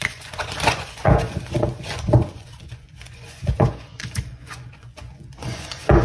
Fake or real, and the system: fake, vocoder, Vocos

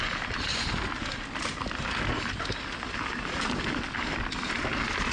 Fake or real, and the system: real